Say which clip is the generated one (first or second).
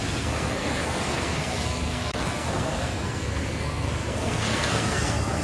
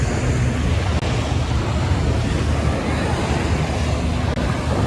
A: first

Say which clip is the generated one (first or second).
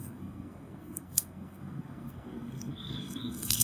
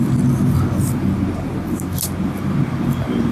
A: first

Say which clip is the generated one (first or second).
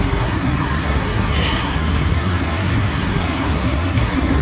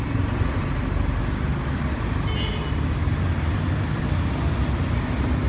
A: first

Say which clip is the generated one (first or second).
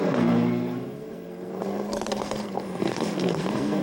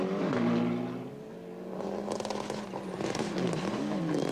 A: first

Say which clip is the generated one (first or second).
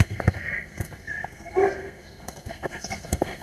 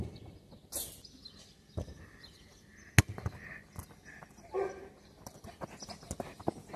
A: first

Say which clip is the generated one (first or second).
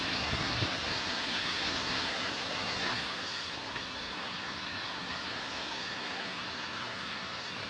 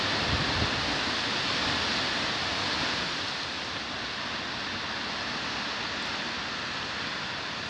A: first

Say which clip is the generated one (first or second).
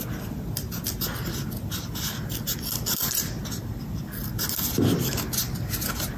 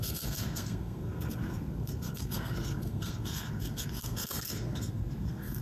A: second